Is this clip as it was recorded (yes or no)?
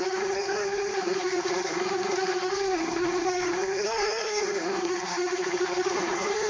no